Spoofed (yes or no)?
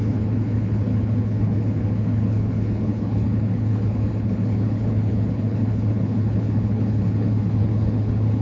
yes